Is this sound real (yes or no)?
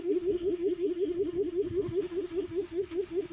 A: no